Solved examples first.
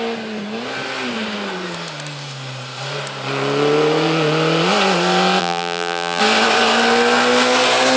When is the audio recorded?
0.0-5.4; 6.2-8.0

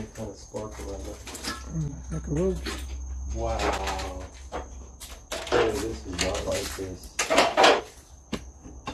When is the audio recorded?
0.0-5.9; 7.8-8.9

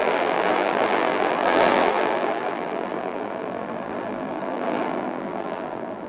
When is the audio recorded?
none

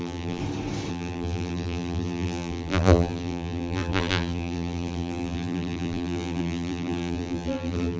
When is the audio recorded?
0.4-0.9